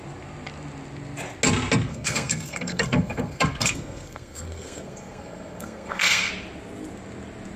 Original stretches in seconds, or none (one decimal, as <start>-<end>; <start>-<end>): 0.0-1.9; 6.3-7.6